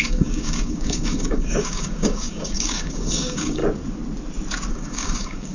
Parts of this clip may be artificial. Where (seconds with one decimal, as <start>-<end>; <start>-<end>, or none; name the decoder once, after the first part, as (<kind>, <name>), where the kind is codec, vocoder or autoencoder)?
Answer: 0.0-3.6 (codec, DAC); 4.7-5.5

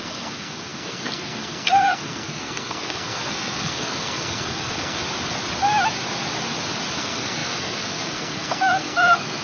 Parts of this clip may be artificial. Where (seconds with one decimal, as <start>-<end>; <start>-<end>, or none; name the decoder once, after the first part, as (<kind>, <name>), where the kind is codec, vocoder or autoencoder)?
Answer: 0.0-5.0 (codec, SNAC); 7.0-9.4

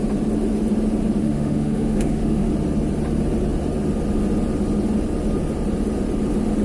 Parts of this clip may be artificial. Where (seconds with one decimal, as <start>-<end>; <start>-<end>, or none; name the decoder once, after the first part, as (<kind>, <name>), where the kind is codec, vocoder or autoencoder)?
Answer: 1.2-2.5 (autoencoder, DAC-VAE)

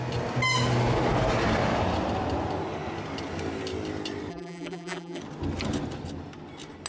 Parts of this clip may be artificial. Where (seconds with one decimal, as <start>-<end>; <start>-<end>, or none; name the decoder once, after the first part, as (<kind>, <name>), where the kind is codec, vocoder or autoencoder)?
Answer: 4.3-5.2 (vocoder, BigVGAN v2)

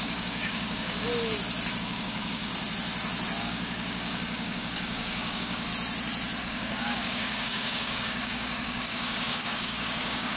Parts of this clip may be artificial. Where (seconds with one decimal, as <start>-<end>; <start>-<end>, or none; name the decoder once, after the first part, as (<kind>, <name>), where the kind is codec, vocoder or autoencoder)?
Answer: 0.0-1.1 (codec, DAC); 1.8-2.5; 3.4-5.7; 6.4-10.4

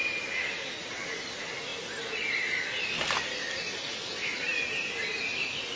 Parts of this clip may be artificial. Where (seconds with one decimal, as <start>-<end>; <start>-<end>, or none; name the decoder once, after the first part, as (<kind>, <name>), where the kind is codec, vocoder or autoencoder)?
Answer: none